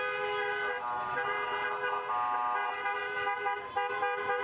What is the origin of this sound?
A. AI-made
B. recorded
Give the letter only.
B